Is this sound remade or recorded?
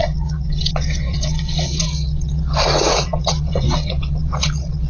remade